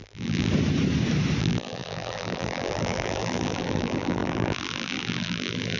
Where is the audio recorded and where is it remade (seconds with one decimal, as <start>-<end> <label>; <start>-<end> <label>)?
0.0-0.5 remade; 0.5-1.4 recorded; 1.4-5.8 remade